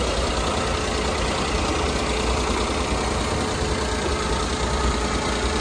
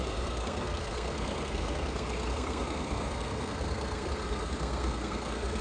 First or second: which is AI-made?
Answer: second